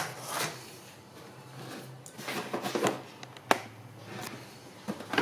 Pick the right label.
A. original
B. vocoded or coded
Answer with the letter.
A